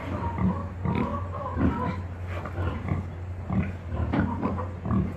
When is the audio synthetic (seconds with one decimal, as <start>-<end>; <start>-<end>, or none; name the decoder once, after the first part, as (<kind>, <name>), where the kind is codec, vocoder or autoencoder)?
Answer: none